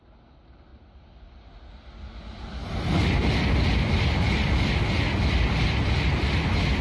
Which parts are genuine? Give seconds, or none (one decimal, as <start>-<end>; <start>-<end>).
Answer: 0.0-6.8

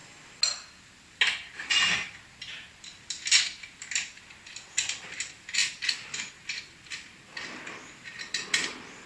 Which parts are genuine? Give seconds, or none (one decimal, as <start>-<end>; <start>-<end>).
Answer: 0.0-9.1

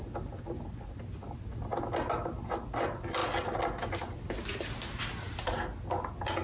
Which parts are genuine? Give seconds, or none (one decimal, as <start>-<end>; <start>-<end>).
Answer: 0.0-6.4

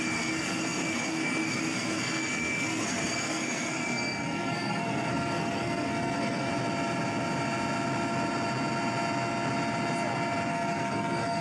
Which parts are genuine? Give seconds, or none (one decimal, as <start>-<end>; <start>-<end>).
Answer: 6.5-10.5

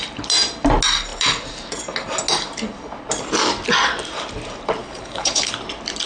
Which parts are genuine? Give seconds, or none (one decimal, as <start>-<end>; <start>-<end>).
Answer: 0.0-4.8; 5.5-6.1

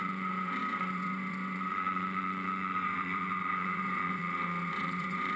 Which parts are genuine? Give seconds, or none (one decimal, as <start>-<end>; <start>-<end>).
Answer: 4.2-4.7